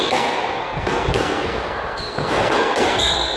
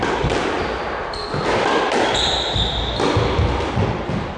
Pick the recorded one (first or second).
second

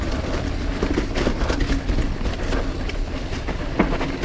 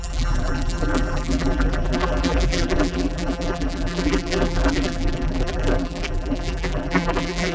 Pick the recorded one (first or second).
first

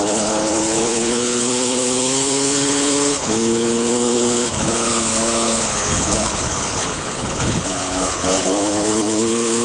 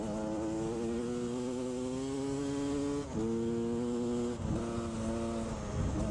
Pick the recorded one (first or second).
second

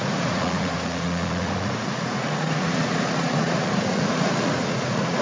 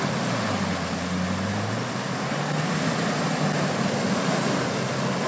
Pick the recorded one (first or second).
second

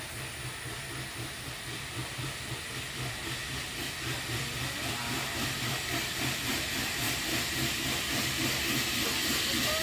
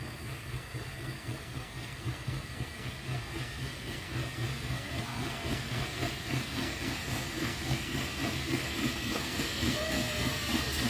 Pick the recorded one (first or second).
first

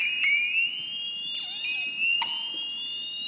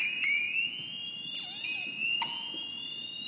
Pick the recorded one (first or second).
first